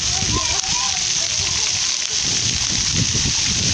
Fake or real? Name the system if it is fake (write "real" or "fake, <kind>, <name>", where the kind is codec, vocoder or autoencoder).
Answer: real